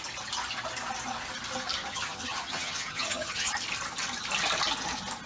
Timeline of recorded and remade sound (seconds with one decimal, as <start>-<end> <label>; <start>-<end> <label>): 0.0-1.8 recorded; 1.8-3.5 remade; 3.5-5.3 recorded